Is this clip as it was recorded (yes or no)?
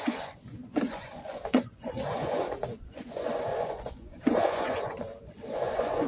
no